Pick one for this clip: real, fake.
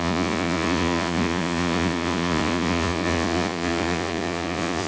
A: fake